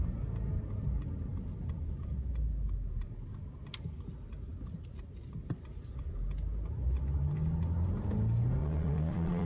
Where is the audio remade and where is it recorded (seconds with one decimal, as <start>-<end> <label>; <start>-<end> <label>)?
0.0-8.6 recorded; 8.6-9.5 remade